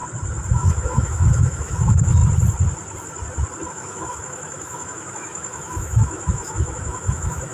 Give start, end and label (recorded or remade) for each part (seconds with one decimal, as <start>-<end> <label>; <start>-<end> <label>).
0.0-0.5 recorded; 0.5-2.2 remade; 2.2-3.7 recorded; 3.7-7.5 remade